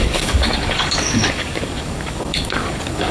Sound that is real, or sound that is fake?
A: fake